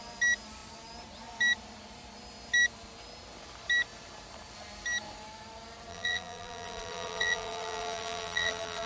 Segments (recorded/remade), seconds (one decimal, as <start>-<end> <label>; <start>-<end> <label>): 0.0-5.9 recorded; 5.9-8.9 remade